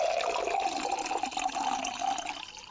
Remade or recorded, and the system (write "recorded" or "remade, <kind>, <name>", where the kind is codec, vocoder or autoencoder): recorded